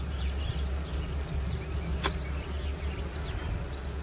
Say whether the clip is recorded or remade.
recorded